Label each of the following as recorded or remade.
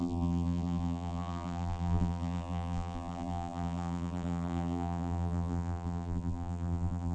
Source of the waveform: remade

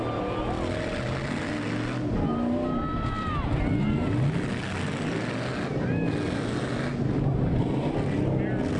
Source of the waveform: recorded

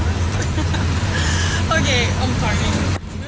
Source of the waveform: recorded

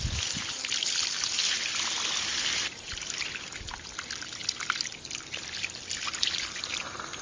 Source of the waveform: recorded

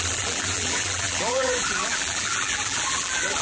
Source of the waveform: remade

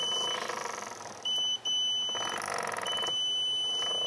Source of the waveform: recorded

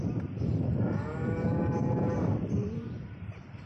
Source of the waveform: remade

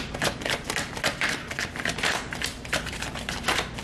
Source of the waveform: remade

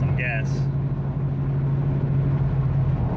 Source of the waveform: recorded